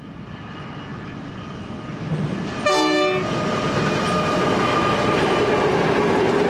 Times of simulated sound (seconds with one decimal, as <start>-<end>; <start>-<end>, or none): none